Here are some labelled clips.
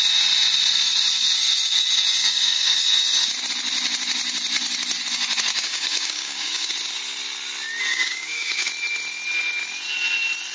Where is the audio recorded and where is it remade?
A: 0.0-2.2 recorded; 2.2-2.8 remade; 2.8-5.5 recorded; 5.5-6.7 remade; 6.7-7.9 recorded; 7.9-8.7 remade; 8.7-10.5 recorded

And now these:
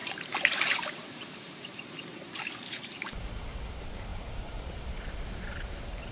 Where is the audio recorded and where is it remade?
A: 0.0-6.1 remade

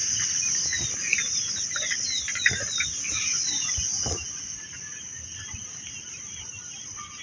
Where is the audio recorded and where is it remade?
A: 0.0-7.2 recorded

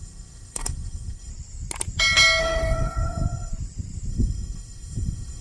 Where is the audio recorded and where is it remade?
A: 0.0-1.3 remade; 1.3-2.4 recorded; 2.4-3.5 remade; 3.5-4.1 recorded; 4.1-5.4 remade

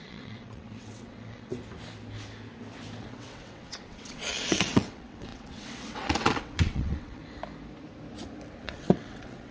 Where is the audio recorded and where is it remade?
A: 0.0-1.5 remade; 1.5-3.0 recorded; 3.0-7.2 remade; 7.2-8.6 recorded; 8.6-9.5 remade

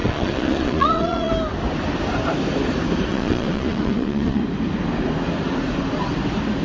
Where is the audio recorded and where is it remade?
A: 0.0-1.3 remade; 1.3-3.1 recorded; 3.1-4.4 remade; 4.4-6.6 recorded